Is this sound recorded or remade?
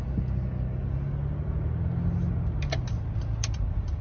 recorded